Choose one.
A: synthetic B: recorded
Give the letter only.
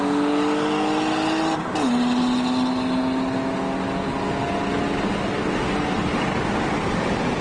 B